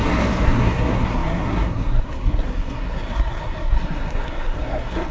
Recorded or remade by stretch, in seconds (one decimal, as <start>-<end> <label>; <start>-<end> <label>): 0.0-5.1 remade